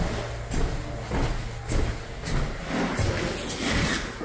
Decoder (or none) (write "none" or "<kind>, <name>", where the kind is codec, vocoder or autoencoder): none